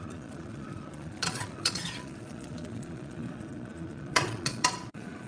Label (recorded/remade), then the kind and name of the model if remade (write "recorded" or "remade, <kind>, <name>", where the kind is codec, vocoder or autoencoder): remade, vocoder, Vocos